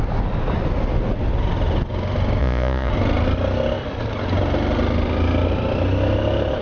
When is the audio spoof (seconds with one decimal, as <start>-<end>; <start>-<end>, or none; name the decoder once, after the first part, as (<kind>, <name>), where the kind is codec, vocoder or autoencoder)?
2.4-2.9 (vocoder, Vocos)